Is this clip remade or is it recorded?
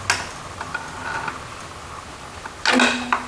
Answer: recorded